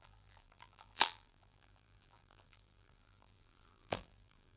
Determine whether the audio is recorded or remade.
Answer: remade